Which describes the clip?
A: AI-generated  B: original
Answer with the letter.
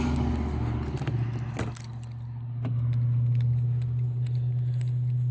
B